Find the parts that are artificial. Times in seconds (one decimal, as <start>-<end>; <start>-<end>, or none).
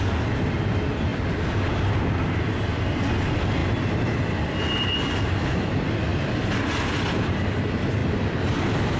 none